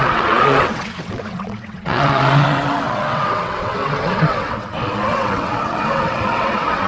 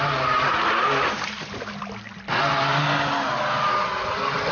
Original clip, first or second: second